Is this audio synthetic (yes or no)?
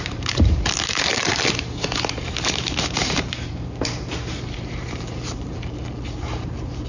yes